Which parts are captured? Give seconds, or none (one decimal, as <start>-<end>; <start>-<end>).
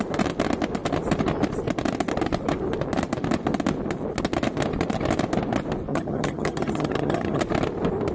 0.0-5.9; 7.4-8.1